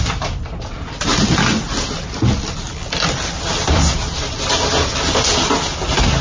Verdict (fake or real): real